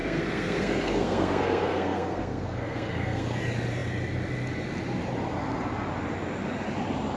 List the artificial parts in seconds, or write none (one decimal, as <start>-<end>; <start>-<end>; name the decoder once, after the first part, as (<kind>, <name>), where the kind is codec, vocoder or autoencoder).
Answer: 0.0-3.4 (codec, SNAC)